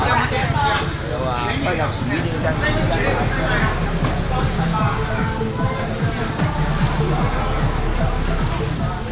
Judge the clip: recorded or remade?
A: recorded